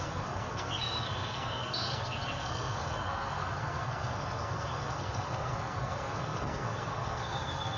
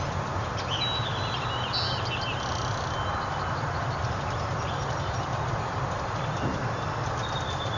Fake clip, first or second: first